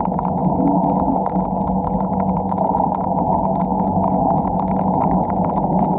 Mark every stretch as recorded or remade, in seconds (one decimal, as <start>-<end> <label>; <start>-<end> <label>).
0.0-6.0 recorded